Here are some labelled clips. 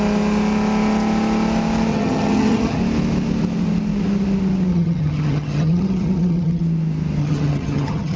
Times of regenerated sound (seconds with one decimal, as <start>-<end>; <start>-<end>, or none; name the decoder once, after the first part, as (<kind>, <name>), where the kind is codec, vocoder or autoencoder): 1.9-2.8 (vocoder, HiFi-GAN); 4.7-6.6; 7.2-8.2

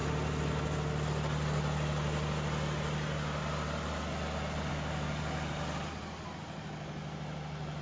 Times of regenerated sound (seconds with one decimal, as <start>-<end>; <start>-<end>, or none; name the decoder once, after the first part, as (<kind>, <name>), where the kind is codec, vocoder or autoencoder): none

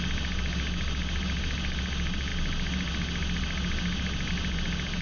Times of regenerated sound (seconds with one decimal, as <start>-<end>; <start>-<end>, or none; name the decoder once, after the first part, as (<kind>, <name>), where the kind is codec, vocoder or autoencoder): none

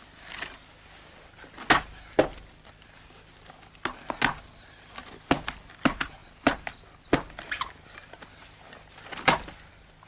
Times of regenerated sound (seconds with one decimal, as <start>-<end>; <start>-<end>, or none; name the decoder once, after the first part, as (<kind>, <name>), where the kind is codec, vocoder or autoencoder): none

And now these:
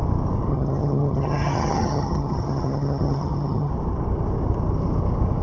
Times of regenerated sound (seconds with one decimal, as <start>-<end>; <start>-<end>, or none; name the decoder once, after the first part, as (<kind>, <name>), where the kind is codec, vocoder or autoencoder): 0.5-3.7 (vocoder, HiFi-GAN)